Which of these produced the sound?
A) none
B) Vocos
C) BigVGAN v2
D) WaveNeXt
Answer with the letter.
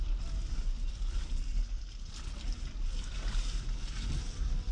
C